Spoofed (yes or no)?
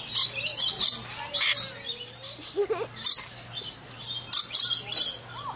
no